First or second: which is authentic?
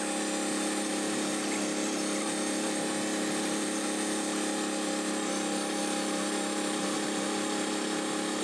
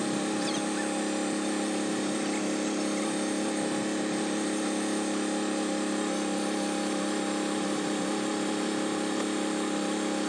first